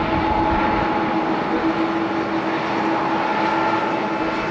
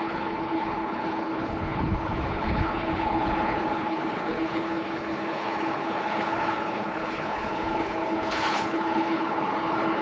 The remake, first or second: second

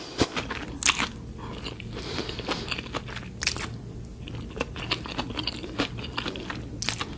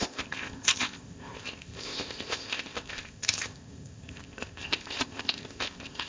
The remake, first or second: second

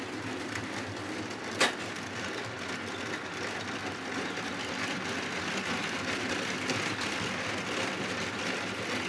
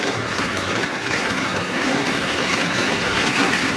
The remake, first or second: second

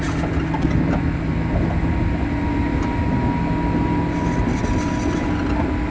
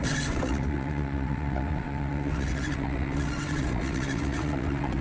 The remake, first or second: second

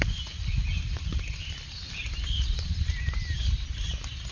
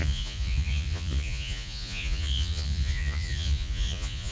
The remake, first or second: second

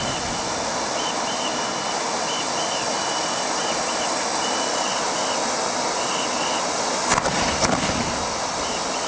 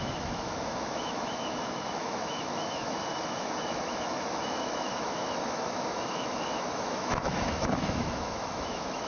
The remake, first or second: second